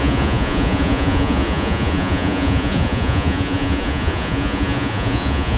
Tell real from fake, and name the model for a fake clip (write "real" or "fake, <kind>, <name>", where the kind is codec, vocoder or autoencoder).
fake, vocoder, Vocos